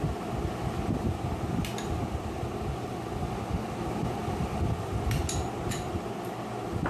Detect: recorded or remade recorded